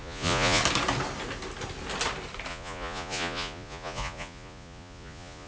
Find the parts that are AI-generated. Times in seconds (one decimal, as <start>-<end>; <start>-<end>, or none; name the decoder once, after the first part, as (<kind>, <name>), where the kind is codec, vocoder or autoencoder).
0.0-0.6 (vocoder, Vocos); 2.5-5.5